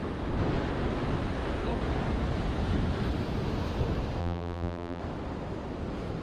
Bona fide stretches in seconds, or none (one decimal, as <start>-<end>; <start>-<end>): 0.0-4.2; 5.0-6.2